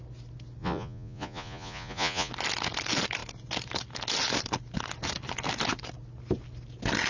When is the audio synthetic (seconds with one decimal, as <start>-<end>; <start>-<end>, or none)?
0.6-2.3